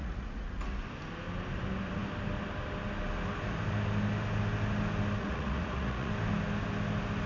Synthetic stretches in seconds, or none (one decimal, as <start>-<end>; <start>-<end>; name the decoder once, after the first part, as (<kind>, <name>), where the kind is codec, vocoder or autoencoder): 0.0-0.8 (vocoder, Vocos); 5.2-6.1